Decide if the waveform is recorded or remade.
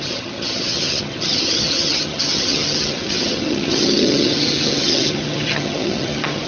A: remade